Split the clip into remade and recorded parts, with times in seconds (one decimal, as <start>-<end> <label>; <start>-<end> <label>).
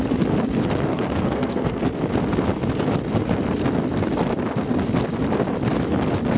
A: 0.0-0.9 recorded; 0.9-1.8 remade; 1.8-6.4 recorded